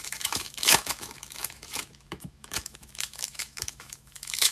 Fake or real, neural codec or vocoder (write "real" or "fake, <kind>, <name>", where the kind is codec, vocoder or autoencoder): fake, autoencoder, DAC-VAE